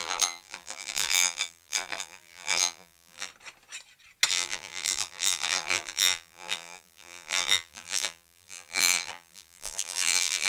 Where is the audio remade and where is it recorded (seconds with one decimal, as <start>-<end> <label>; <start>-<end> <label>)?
0.0-3.3 remade; 3.3-4.3 recorded; 4.3-10.5 remade